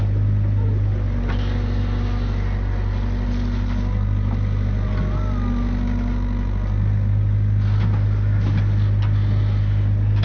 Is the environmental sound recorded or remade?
recorded